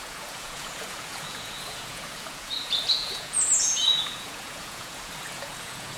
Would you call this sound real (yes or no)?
no